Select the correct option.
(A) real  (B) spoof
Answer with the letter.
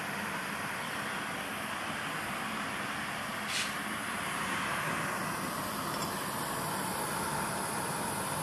A